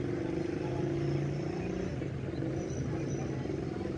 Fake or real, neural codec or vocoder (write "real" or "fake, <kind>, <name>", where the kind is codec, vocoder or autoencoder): real